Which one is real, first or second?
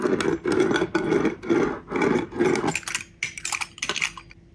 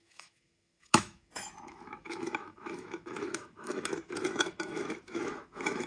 first